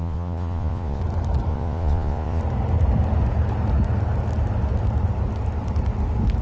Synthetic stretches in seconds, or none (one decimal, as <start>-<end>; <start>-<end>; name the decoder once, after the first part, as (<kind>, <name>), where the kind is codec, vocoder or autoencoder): 0.0-1.0 (vocoder, Vocos); 1.5-2.4